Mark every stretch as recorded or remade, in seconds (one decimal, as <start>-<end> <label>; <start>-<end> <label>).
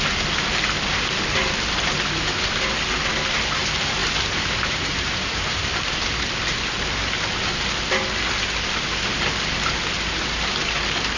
0.0-4.0 recorded; 4.0-6.2 remade; 6.2-11.2 recorded